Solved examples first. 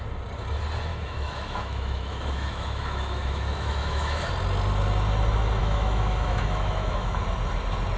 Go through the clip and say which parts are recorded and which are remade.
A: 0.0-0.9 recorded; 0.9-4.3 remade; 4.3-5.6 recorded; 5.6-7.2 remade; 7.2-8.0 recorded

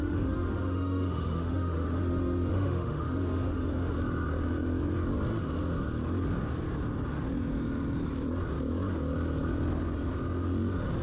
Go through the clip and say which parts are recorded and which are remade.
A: 0.0-3.9 remade; 3.9-11.0 recorded

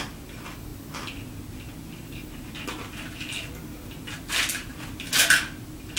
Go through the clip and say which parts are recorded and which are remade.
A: 0.0-6.0 recorded